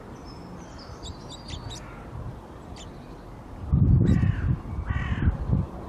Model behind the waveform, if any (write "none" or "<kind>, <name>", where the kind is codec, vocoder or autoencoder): vocoder, BigVGAN v2